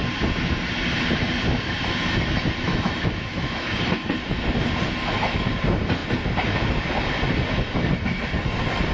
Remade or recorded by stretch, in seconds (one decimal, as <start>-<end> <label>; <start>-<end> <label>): 0.0-2.7 recorded; 2.7-3.8 remade; 3.8-8.9 recorded